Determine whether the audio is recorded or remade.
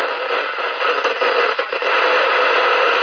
recorded